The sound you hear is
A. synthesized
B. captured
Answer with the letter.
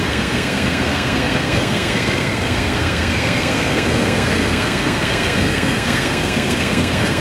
A